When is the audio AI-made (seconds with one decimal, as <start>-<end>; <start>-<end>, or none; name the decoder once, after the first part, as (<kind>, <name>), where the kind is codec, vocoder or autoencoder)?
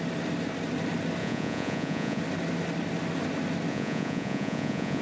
1.2-2.2 (vocoder, Vocos); 3.7-5.0